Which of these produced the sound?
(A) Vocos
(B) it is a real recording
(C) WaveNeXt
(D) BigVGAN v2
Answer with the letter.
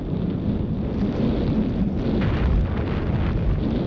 B